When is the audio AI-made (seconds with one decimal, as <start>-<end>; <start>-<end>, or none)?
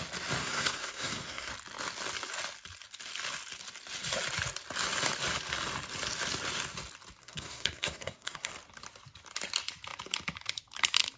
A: 0.4-1.5; 7.2-8.5